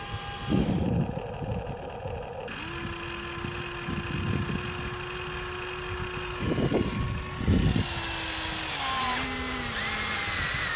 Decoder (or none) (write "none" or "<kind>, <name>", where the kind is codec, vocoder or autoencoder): none